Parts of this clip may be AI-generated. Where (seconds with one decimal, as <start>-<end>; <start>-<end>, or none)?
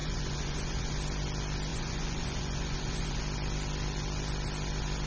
0.0-0.9; 1.7-3.2